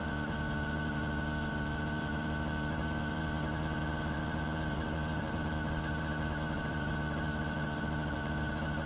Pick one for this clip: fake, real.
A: fake